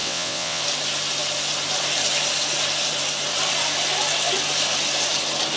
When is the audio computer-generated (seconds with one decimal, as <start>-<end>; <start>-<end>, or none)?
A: 0.0-0.6